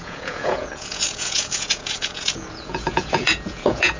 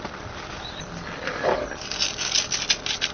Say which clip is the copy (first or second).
first